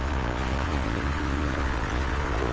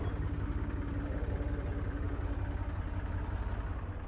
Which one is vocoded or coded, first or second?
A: first